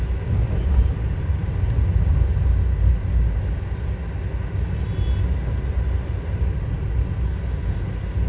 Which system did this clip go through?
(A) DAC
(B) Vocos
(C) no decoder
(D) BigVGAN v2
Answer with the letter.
C